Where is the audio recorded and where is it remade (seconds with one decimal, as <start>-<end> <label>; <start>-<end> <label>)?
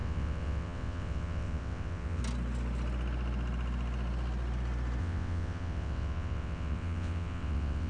0.0-2.2 remade; 2.2-5.0 recorded; 5.0-7.9 remade